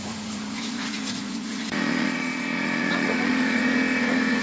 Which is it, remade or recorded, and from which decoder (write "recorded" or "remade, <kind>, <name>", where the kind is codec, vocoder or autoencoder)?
remade, vocoder, Vocos